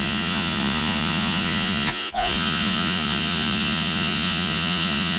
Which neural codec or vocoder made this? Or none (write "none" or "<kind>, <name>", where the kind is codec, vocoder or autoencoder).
vocoder, Vocos